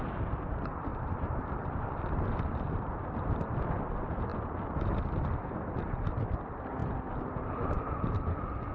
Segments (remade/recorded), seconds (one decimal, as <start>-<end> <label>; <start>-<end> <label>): 0.0-4.3 remade; 4.3-5.3 recorded; 5.3-6.8 remade; 6.8-8.7 recorded